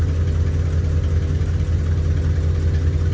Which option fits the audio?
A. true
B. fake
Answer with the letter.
A